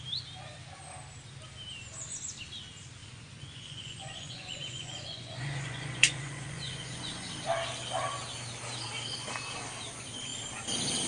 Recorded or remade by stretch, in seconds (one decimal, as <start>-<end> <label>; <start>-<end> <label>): 0.0-3.0 recorded; 3.0-7.3 remade; 7.3-11.1 recorded